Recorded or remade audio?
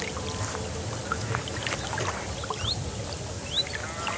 recorded